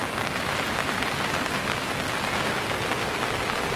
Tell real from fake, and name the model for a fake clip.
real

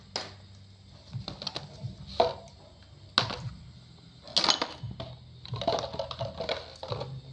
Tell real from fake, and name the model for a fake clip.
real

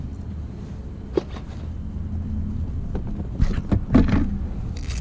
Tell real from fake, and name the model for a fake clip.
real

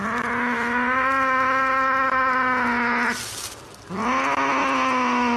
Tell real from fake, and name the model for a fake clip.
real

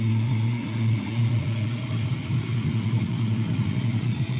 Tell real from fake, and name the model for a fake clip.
fake, vocoder, Vocos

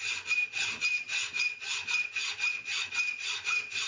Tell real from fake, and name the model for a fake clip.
real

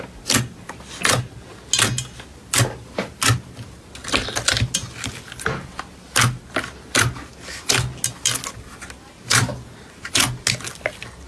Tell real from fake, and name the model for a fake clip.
real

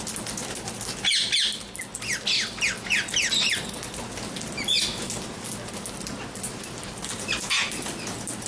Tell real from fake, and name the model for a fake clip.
real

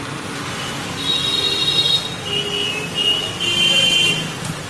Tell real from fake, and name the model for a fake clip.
real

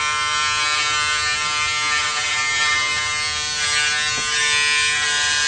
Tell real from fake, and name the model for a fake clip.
real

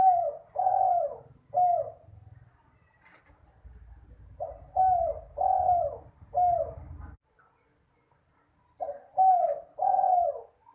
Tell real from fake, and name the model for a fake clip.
real